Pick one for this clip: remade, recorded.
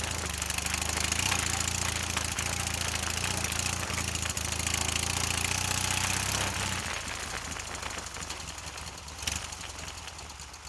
recorded